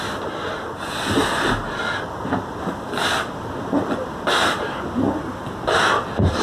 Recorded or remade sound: recorded